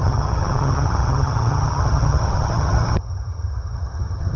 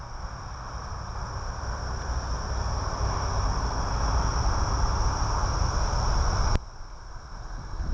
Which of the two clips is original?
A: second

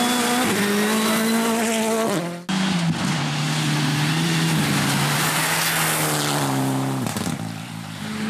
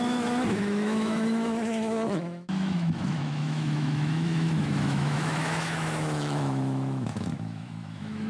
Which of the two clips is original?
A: first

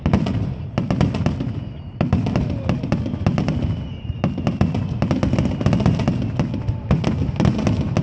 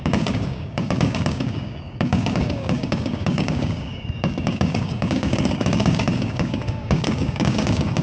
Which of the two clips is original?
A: first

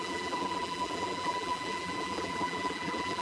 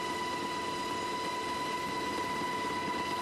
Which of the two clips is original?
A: second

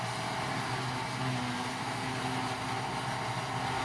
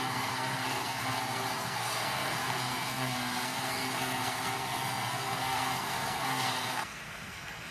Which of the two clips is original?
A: first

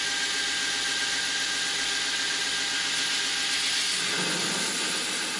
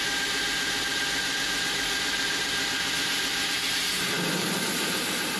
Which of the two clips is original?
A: first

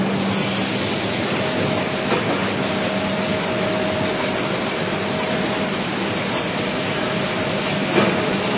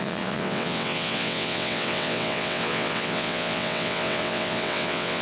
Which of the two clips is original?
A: first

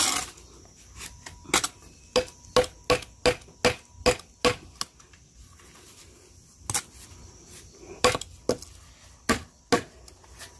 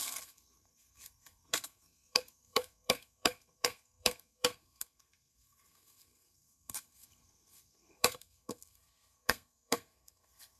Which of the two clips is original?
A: first